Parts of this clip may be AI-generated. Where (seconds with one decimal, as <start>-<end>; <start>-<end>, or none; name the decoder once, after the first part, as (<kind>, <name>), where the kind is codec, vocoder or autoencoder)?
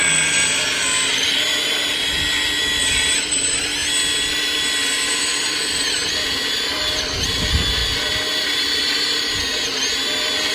1.2-3.7 (vocoder, BigVGAN v2); 4.3-10.5